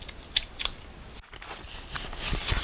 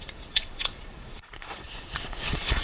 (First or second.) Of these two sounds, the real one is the first